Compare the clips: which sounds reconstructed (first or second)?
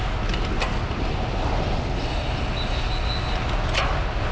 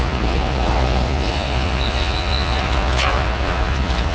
second